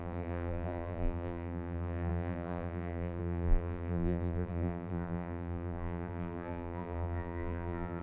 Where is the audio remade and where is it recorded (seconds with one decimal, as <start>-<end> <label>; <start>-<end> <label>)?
0.0-8.0 remade